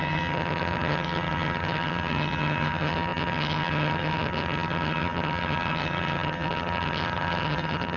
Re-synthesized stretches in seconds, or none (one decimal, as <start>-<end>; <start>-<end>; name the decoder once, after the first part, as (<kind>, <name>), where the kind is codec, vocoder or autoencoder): 0.0-8.0 (vocoder, HiFi-GAN)